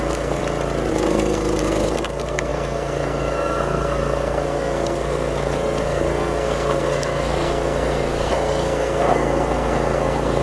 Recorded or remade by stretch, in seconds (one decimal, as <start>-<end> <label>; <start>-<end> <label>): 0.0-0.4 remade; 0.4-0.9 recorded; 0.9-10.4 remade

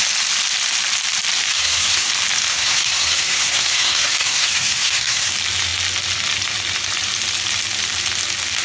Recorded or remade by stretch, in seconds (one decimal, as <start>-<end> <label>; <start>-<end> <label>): 0.0-1.5 recorded; 1.5-2.1 remade; 2.1-2.5 recorded; 2.5-5.3 remade; 5.3-8.6 recorded

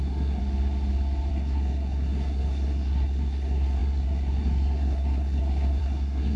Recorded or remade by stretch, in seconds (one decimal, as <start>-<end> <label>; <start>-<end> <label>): 0.0-0.4 remade; 0.4-1.3 recorded; 1.3-6.4 remade

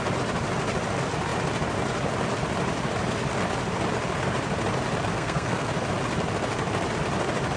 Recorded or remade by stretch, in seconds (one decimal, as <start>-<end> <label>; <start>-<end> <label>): 0.0-5.1 recorded; 5.1-5.7 remade; 5.7-7.6 recorded

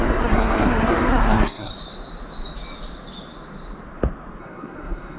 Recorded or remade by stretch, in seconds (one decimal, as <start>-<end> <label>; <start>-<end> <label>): 0.0-1.7 remade; 1.7-4.4 recorded; 4.4-5.2 remade